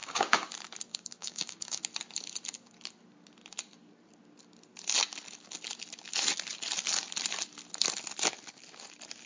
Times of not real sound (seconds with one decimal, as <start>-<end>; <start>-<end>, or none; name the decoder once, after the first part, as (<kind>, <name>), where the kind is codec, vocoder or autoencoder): 0.0-0.5 (codec, DAC); 0.9-1.8